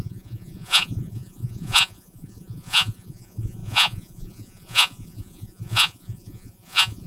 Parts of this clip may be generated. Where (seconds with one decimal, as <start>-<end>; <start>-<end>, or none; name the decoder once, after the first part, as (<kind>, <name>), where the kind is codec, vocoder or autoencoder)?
0.0-7.1 (vocoder, Vocos)